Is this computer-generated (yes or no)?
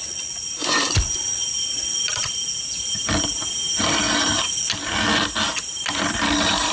no